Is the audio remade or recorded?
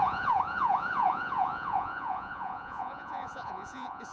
remade